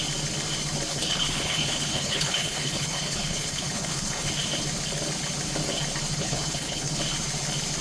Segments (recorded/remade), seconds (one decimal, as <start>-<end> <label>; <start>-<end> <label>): 0.0-0.9 recorded; 0.9-4.3 remade; 4.3-6.1 recorded; 6.1-7.0 remade; 7.0-7.8 recorded